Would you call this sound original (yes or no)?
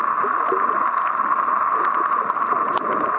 yes